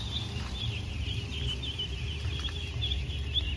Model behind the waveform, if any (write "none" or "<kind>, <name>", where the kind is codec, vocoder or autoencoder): none